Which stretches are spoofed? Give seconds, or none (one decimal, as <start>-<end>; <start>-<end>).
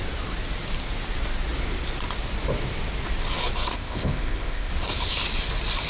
3.7-4.7